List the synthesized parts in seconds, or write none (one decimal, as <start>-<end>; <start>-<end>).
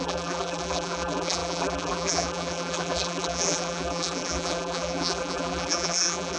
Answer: 0.0-6.4